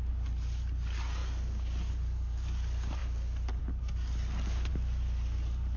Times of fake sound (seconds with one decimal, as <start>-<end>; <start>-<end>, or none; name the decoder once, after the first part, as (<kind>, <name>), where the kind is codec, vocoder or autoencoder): none